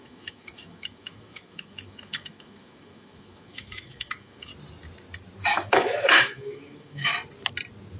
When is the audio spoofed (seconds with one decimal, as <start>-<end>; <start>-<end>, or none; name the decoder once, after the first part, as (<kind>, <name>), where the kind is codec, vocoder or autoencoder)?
0.0-4.5 (autoencoder, DAC-VAE); 5.7-7.1